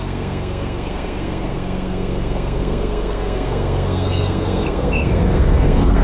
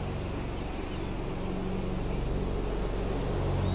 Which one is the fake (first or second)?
first